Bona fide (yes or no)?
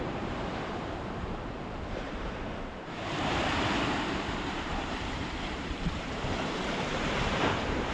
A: no